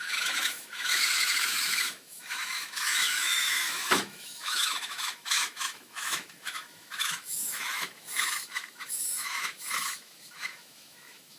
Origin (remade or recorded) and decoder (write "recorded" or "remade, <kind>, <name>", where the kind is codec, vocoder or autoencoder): remade, autoencoder, DAC-VAE